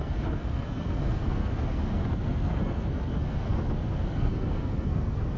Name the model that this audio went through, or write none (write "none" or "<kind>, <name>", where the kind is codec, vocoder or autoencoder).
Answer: codec, SNAC